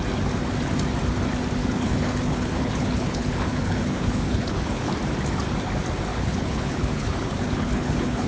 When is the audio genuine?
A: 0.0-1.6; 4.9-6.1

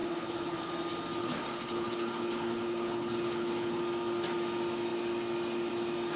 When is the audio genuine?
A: 0.7-1.2; 3.8-6.2

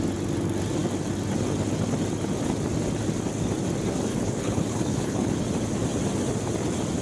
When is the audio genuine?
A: 0.0-4.1; 5.4-7.0